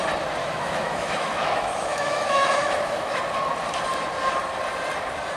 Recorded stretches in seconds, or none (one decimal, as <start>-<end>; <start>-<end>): 0.0-0.4; 3.2-5.4